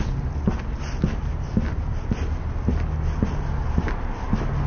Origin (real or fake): real